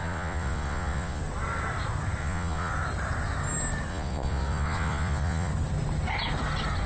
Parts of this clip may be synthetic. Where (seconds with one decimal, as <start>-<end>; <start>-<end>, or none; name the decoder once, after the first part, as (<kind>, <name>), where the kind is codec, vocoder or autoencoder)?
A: 0.0-1.2 (vocoder, Vocos); 2.2-2.7; 3.9-5.5